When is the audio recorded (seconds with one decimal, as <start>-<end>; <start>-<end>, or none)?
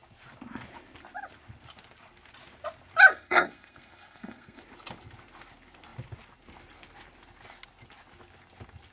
0.0-3.1; 4.6-8.9